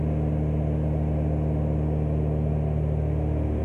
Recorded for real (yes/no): yes